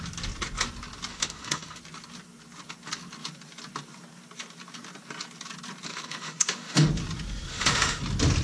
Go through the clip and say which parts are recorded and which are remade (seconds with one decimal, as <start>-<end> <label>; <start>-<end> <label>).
0.0-1.1 recorded; 1.1-1.8 remade; 1.8-5.9 recorded; 5.9-6.9 remade; 6.9-7.5 recorded; 7.5-8.0 remade; 8.0-8.4 recorded